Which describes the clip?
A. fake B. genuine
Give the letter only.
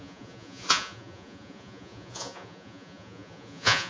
A